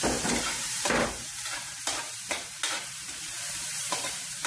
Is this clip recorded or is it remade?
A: remade